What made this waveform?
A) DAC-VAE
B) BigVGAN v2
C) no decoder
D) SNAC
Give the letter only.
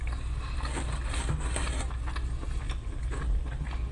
C